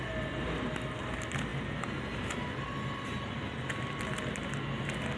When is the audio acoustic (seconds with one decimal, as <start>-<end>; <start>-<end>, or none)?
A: 0.0-5.2